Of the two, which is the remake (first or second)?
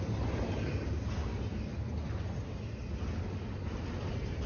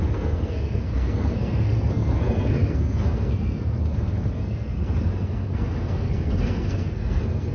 second